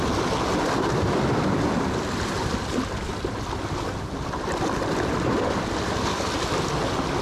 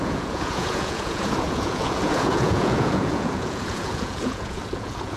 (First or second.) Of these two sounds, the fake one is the second